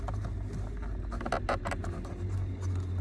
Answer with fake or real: real